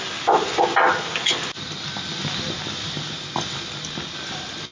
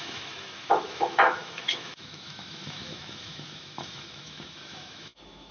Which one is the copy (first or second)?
second